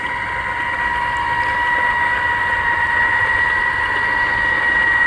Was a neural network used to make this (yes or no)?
no